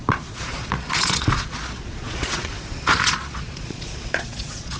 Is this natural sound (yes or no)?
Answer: no